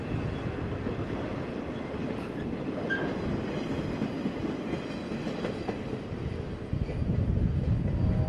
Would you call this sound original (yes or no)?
yes